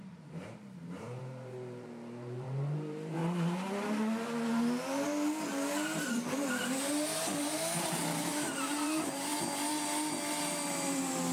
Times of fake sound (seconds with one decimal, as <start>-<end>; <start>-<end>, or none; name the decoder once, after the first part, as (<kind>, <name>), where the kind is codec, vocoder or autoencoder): 0.0-3.2 (vocoder, BigVGAN v2); 6.1-9.3; 10.3-11.3